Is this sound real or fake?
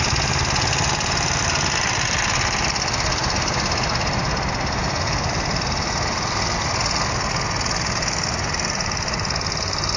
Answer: real